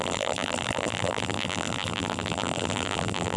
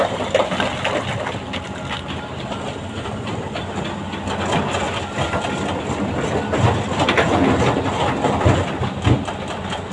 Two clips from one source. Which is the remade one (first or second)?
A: first